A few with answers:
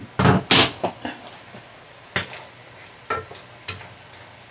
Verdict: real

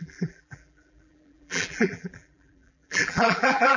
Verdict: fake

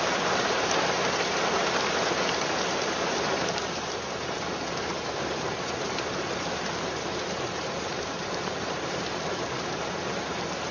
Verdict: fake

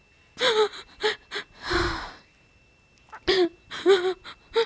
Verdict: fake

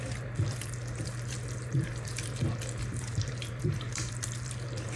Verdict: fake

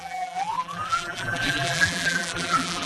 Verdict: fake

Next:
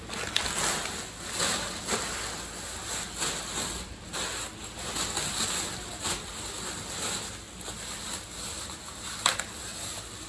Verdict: real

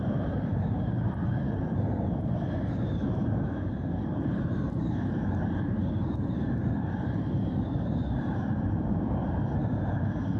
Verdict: fake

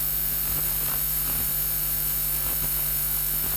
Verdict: real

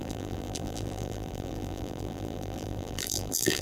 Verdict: fake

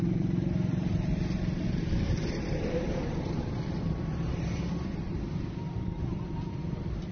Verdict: fake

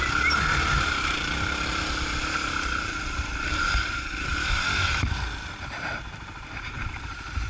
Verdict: fake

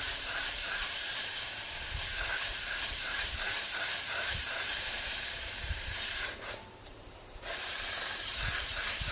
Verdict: fake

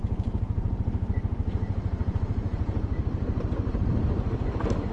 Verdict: fake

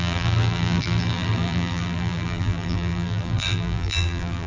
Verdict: fake